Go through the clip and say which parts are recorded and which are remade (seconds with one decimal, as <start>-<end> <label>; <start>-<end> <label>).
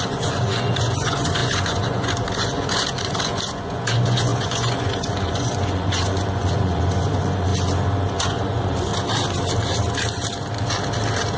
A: 0.0-7.5 remade; 7.5-8.1 recorded; 8.1-8.9 remade; 8.9-11.4 recorded